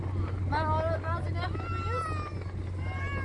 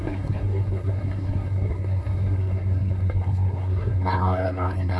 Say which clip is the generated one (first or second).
second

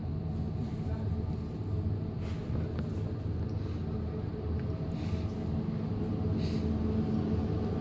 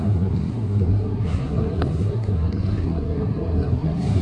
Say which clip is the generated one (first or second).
second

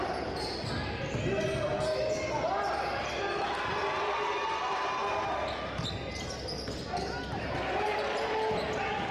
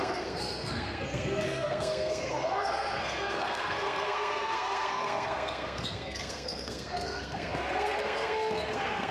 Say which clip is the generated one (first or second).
second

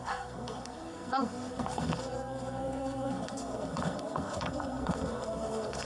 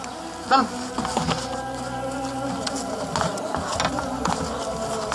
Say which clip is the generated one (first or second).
first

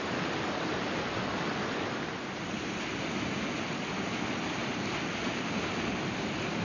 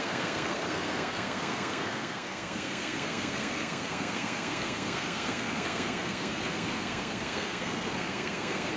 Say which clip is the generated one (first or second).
second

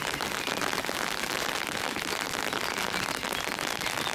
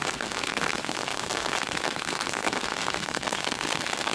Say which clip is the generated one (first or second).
second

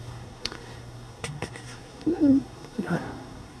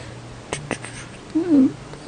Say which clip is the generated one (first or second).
first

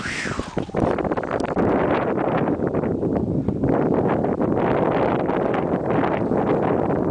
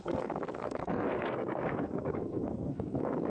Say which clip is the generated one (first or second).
second